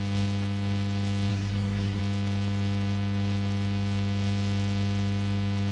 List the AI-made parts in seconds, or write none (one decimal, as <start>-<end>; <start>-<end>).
1.3-2.0